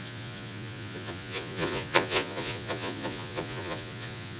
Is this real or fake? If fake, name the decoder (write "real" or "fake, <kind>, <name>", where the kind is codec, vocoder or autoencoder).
fake, vocoder, Vocos